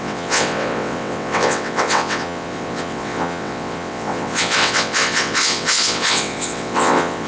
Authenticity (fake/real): fake